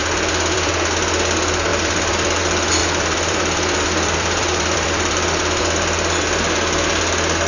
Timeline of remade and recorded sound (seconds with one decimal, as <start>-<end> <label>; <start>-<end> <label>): 0.0-0.7 remade; 0.7-1.7 recorded; 1.7-2.4 remade; 2.4-2.8 recorded; 2.8-5.6 remade; 5.6-7.5 recorded

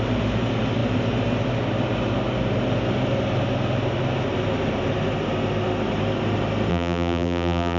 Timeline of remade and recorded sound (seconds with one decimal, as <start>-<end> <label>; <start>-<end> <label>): 0.0-6.7 recorded; 6.7-7.8 remade

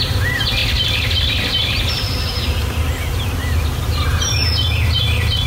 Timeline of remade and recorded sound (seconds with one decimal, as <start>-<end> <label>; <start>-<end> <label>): 0.0-5.5 recorded

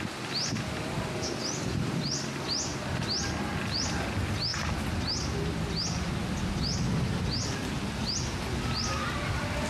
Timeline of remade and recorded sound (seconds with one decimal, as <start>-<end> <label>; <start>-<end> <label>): 0.0-9.7 recorded